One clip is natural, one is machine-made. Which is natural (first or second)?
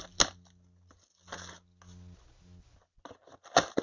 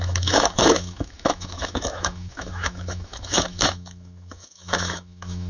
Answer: first